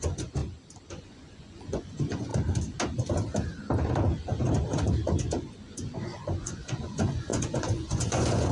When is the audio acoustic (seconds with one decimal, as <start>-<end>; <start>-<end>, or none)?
0.4-0.9; 2.3-5.2